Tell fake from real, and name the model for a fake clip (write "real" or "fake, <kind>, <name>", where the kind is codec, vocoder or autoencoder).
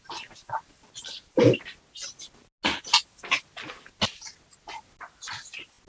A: real